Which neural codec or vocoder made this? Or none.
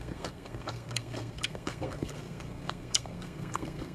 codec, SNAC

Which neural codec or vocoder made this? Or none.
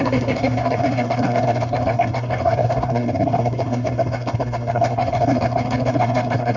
codec, SNAC